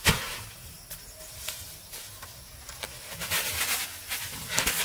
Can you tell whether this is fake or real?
real